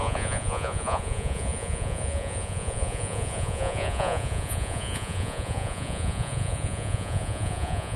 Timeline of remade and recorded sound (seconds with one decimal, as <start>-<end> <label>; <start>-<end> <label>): 0.0-8.0 remade